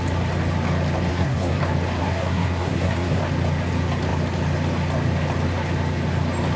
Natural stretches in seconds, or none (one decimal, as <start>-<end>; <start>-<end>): 0.0-1.1; 1.6-2.0; 3.2-6.6